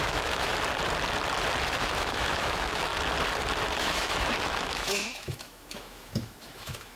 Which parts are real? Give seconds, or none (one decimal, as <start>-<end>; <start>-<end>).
0.5-1.7; 2.9-3.8